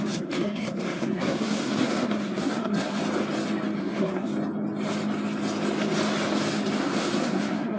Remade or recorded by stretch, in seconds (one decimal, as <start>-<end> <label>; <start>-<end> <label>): 0.0-3.0 remade; 3.0-3.8 recorded; 3.8-4.3 remade; 4.3-6.8 recorded; 6.8-7.8 remade